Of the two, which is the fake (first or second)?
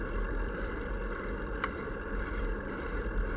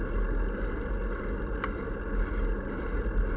first